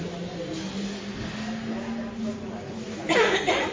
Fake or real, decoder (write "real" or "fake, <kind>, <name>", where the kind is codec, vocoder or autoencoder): real